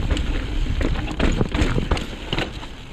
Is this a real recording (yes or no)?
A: yes